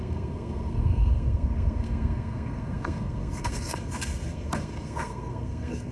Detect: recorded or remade remade